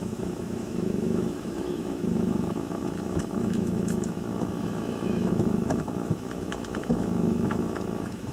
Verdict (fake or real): fake